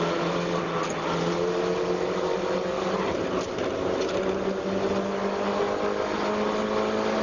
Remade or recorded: recorded